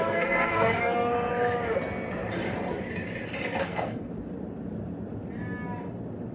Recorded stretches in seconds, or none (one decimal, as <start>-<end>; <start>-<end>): 1.3-3.6; 4.1-6.3